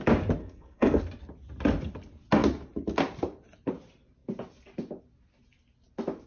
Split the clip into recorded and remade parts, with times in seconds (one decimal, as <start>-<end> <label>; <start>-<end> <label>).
0.0-0.4 recorded; 0.4-1.0 remade; 1.0-6.3 recorded